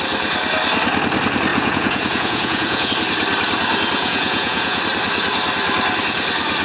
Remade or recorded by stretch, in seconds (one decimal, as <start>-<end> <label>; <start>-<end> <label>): 0.0-1.5 recorded; 1.5-2.9 remade; 2.9-4.0 recorded; 4.0-4.8 remade; 4.8-6.6 recorded